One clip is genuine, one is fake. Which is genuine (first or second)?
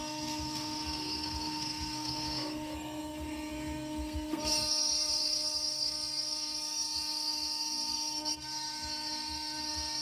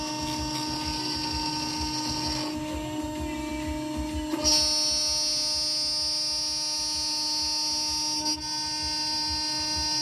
second